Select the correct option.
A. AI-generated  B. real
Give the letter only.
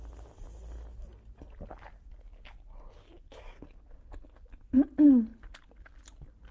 B